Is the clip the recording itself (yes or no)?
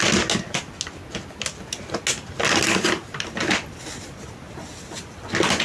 yes